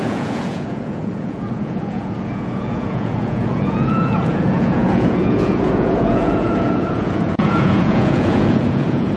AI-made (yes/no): yes